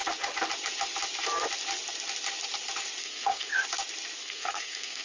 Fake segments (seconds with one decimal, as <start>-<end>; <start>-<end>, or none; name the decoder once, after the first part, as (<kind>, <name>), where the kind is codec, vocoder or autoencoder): 3.0-3.5 (codec, SNAC); 4.2-5.0